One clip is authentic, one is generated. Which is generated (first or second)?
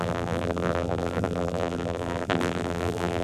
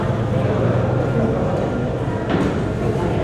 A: first